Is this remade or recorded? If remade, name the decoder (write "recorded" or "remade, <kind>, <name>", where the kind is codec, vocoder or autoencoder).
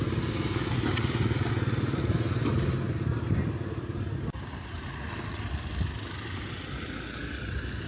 recorded